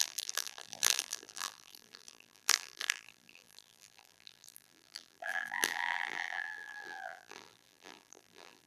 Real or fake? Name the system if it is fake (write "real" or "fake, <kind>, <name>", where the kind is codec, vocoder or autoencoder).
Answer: fake, vocoder, BigVGAN v2